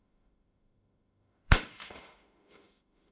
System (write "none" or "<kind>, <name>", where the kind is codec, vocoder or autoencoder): autoencoder, DAC-VAE